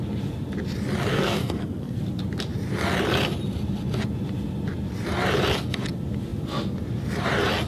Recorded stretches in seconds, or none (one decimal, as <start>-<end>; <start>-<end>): 0.0-1.1; 2.0-7.7